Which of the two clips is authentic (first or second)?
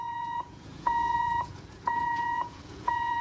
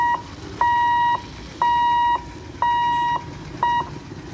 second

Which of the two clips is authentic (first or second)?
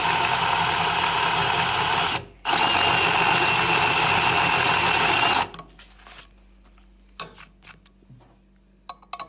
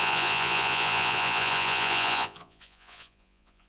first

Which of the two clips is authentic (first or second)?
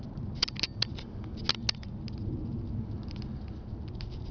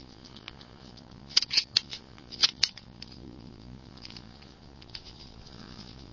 first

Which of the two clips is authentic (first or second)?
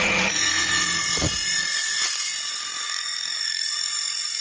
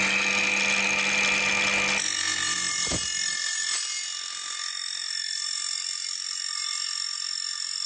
second